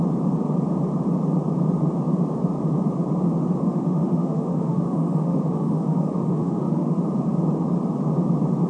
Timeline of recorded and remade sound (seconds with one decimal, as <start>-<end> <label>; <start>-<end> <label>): 0.0-3.6 recorded; 3.6-7.0 remade; 7.0-8.7 recorded